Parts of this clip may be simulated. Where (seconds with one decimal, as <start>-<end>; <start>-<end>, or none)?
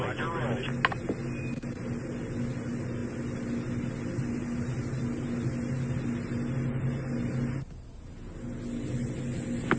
none